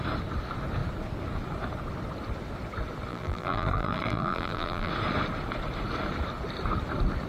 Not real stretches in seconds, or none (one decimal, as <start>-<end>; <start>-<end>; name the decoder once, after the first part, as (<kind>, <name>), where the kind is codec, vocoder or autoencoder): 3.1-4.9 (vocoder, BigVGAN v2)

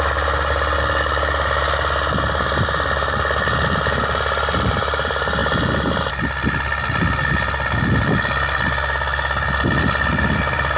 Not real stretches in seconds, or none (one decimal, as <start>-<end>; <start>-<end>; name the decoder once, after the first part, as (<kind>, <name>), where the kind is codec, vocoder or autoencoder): none

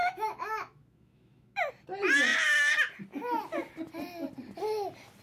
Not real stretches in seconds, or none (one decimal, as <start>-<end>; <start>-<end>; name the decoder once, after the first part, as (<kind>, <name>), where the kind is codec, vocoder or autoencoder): 0.0-1.7 (autoencoder, DAC-VAE)